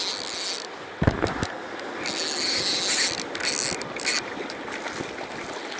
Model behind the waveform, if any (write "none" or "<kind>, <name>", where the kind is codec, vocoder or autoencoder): none